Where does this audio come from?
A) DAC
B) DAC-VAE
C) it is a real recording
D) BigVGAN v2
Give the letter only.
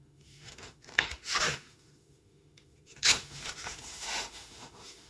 B